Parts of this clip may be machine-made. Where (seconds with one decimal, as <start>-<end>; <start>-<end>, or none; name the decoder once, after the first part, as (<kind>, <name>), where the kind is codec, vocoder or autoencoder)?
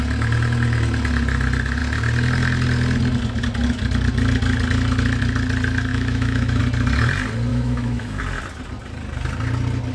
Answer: 5.9-6.6 (autoencoder, DAC-VAE); 7.5-8.2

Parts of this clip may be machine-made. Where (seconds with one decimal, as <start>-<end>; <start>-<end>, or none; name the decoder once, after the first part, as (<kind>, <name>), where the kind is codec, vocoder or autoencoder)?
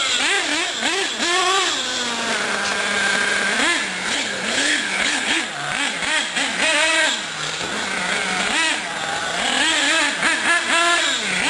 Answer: 4.0-5.4 (codec, HILCodec)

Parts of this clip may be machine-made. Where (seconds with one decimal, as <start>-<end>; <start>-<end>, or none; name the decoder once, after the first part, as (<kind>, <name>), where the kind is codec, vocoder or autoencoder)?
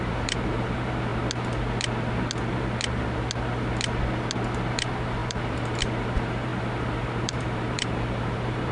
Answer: 0.0-1.1 (vocoder, BigVGAN v2); 4.7-6.5; 7.2-8.7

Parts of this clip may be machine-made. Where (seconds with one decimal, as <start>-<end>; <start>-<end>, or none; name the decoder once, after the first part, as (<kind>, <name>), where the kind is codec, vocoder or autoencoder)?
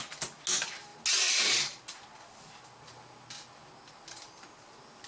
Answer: none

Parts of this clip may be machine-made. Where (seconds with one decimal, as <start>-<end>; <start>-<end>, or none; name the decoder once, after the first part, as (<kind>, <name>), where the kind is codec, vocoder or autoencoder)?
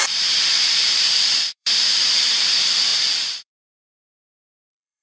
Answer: 0.0-5.0 (vocoder, BigVGAN v2)